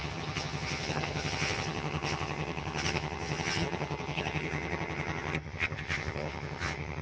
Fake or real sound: fake